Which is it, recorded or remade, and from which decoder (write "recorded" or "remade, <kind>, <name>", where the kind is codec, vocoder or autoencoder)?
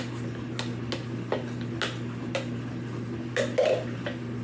recorded